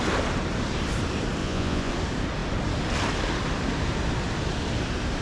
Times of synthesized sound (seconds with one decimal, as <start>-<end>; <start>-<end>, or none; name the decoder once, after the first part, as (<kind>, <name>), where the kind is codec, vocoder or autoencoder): 1.4-1.9 (vocoder, Vocos)

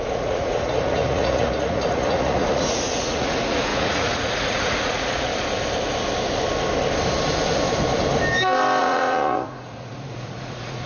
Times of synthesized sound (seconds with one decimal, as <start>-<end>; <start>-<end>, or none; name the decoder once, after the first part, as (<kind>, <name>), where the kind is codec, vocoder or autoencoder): 0.0-5.3 (vocoder, Vocos); 8.8-10.9